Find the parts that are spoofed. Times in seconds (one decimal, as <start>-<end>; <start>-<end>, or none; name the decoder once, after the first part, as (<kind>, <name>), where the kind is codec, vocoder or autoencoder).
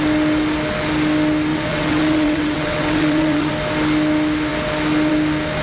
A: 1.5-3.5 (vocoder, WaveNeXt)